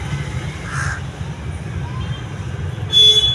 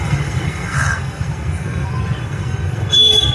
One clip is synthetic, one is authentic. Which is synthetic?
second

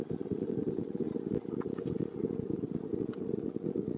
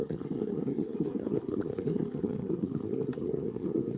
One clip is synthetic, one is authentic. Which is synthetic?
second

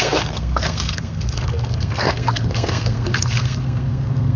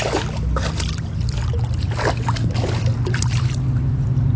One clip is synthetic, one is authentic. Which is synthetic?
first